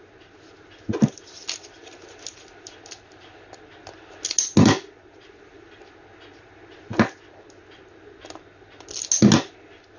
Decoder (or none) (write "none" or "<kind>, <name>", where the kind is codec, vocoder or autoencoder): none